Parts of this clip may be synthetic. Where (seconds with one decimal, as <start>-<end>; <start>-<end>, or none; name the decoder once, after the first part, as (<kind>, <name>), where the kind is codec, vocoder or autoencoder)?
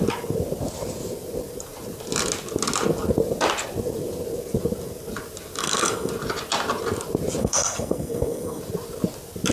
5.6-6.1 (codec, SNAC); 7.4-8.6